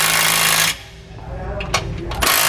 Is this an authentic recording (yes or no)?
yes